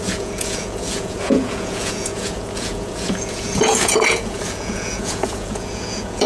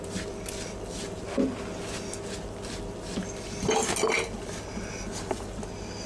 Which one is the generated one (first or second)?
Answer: first